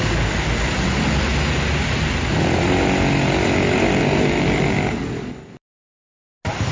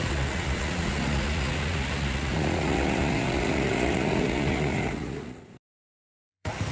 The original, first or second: first